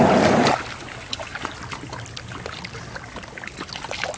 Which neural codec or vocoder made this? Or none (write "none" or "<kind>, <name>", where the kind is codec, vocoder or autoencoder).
none